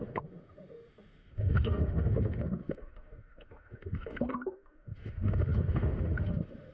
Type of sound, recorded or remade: remade